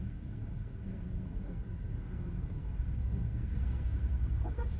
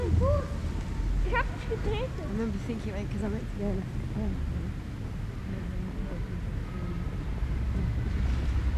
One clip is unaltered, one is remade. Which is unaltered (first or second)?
second